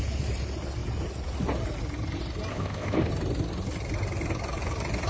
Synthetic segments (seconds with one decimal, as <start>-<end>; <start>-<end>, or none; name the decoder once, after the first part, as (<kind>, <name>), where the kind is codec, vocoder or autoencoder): 2.5-3.1 (codec, ZipCodec)